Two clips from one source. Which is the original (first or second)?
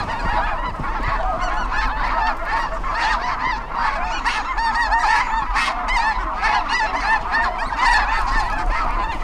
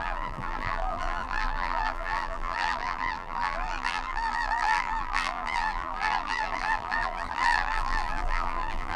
first